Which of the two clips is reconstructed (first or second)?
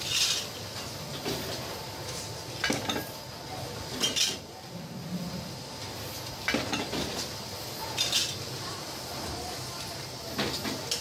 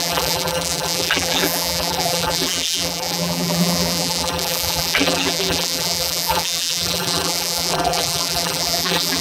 second